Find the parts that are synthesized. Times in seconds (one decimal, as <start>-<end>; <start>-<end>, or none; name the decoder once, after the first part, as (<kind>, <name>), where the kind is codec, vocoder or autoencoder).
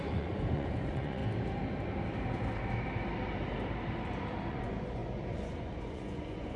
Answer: 0.0-1.2 (vocoder, Vocos); 4.5-6.6